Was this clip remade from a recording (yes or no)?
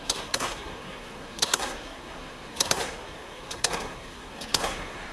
yes